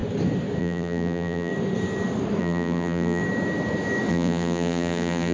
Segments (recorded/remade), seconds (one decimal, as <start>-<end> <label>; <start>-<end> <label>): 0.0-0.6 recorded; 0.6-1.5 remade; 1.5-2.4 recorded; 2.4-3.2 remade; 3.2-4.1 recorded; 4.1-5.3 remade